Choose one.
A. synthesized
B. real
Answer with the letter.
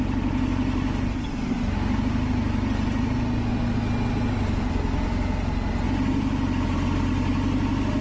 B